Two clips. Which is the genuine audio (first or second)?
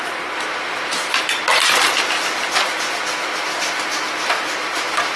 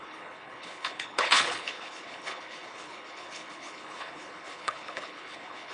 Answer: first